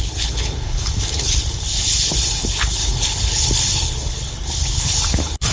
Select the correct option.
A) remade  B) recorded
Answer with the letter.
A